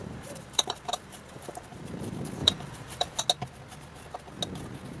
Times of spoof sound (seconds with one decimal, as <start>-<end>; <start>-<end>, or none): 0.0-1.9; 2.4-3.2